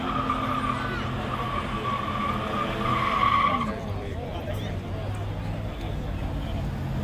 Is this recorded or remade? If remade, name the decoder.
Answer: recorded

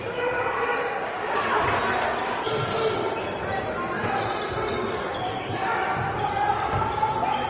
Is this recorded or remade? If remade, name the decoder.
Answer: recorded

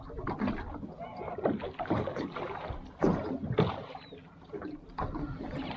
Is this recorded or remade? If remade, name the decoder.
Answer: recorded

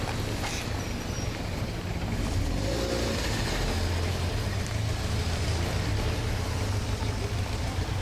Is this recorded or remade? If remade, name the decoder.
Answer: recorded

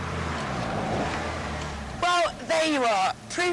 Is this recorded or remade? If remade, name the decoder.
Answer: remade, vocoder, BigVGAN v2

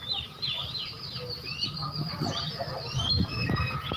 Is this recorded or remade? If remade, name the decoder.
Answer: remade, vocoder, BigVGAN v2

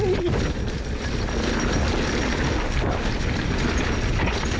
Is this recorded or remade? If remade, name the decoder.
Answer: recorded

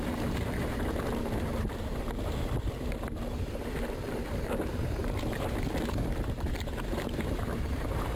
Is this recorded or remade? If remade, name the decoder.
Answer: remade, vocoder, BigVGAN v2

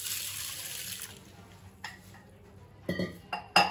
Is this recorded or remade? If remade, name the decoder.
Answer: recorded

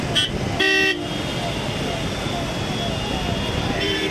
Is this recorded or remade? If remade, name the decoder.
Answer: recorded